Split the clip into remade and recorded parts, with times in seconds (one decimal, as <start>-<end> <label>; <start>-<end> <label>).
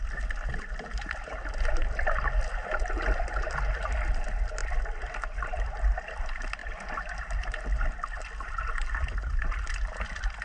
0.0-10.4 recorded